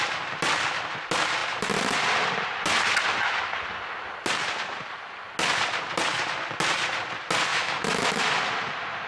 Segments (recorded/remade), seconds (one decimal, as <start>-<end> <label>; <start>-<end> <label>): 0.0-7.5 recorded; 7.5-8.3 remade; 8.3-9.1 recorded